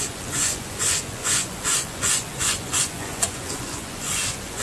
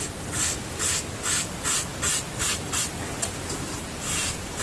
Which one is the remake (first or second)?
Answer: first